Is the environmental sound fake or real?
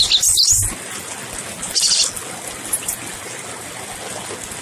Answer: real